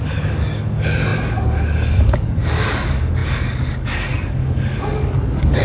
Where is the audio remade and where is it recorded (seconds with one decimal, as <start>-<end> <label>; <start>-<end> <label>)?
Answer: 0.0-5.6 remade